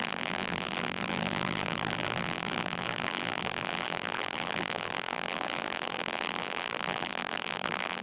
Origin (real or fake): fake